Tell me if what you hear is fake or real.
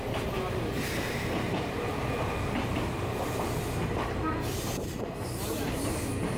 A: fake